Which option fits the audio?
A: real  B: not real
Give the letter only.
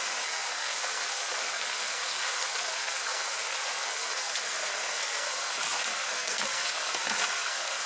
B